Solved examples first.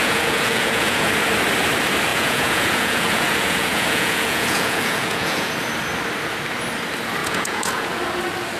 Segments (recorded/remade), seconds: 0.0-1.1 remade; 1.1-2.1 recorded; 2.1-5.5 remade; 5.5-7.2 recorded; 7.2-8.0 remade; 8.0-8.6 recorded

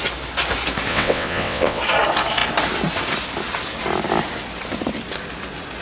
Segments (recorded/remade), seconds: 0.0-0.9 recorded; 0.9-1.8 remade; 1.8-5.8 recorded

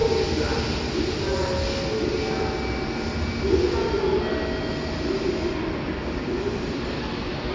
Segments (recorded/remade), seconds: 0.0-7.5 recorded

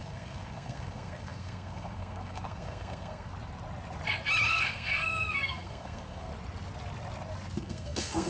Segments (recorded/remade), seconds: 0.0-3.3 remade; 3.3-4.5 recorded; 4.5-6.3 remade; 6.3-7.6 recorded; 7.6-8.3 remade

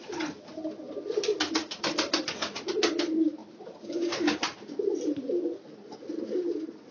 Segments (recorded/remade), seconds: 0.0-1.3 recorded; 1.3-2.6 remade; 2.6-6.9 recorded

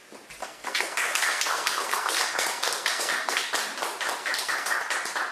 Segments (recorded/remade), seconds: 0.0-0.4 recorded; 0.4-3.5 remade; 3.5-4.2 recorded; 4.2-4.8 remade; 4.8-5.3 recorded

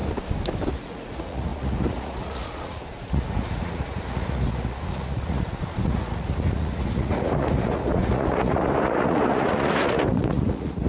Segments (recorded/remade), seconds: 0.0-0.7 recorded; 0.7-10.9 remade

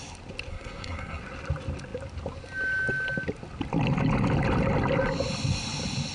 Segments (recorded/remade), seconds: 0.0-0.5 recorded; 0.5-1.2 remade; 1.2-6.1 recorded